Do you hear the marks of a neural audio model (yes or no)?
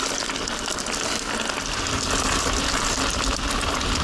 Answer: no